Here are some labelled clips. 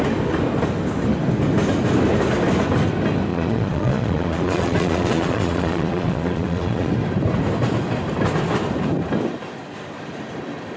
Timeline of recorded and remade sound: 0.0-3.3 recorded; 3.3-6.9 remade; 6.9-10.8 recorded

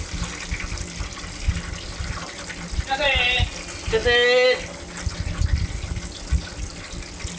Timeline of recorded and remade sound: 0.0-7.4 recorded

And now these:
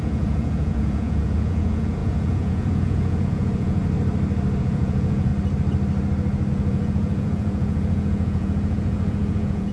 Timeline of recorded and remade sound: 0.0-3.8 remade; 3.8-4.6 recorded; 4.6-5.3 remade; 5.3-6.5 recorded; 6.5-9.7 remade